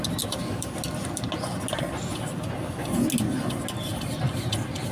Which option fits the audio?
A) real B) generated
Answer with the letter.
A